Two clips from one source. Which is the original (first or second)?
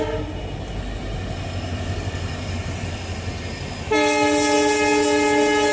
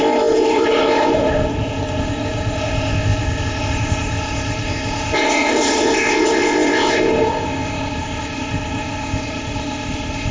first